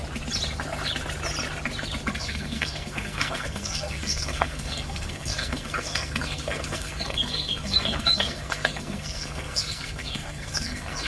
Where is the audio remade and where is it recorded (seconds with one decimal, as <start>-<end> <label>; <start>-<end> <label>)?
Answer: 0.0-2.2 recorded; 2.2-11.1 remade